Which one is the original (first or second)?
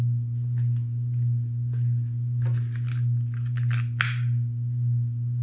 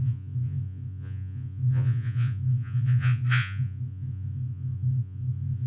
first